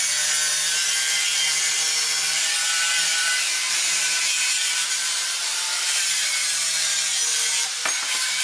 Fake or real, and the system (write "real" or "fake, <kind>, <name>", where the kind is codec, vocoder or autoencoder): fake, vocoder, BigVGAN v2